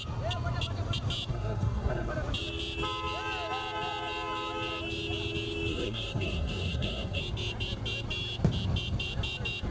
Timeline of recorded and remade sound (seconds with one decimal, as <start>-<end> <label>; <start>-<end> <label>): 0.0-1.3 recorded; 1.3-2.1 remade; 2.1-5.7 recorded; 5.7-7.2 remade; 7.2-9.7 recorded